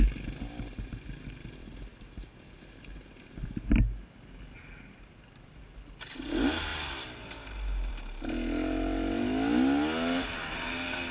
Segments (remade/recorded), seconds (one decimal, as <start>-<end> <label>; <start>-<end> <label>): 0.0-11.1 recorded